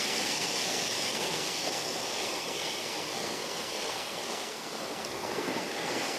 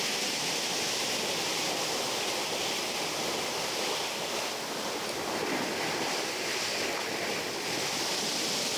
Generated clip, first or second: first